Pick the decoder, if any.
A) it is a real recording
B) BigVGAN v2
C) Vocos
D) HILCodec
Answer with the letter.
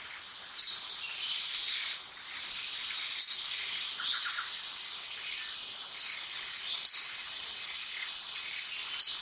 A